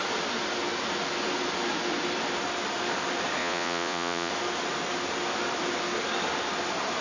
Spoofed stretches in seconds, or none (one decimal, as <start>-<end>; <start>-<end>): 3.4-4.3